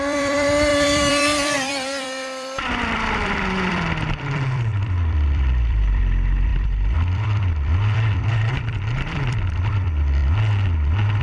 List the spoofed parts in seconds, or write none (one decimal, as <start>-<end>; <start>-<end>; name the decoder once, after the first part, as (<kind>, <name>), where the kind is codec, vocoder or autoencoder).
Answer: 0.0-10.2 (vocoder, BigVGAN v2)